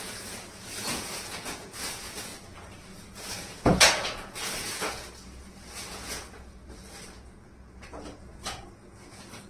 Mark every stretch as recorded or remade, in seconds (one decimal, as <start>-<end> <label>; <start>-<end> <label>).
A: 0.0-2.3 remade; 2.3-3.1 recorded; 3.1-9.5 remade